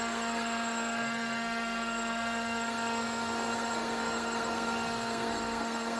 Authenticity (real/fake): fake